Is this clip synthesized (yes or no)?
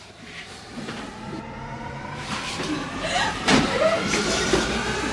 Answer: yes